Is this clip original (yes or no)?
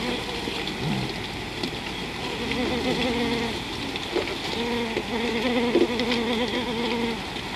yes